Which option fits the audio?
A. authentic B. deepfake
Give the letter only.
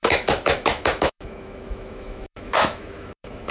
B